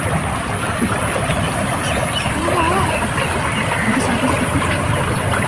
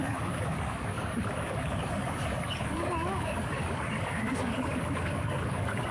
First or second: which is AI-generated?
second